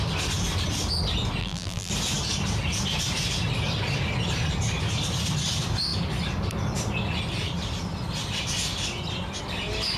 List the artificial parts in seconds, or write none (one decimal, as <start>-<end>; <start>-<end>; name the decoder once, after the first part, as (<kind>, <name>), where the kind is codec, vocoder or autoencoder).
1.4-1.9 (vocoder, BigVGAN v2)